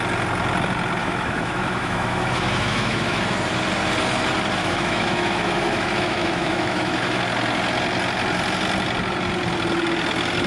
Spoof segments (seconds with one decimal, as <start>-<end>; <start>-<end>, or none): 1.0-3.2; 4.6-7.2